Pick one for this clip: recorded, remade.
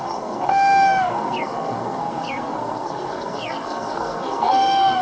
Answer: remade